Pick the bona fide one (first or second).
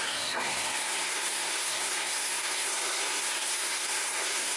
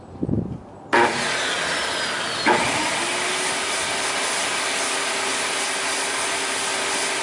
second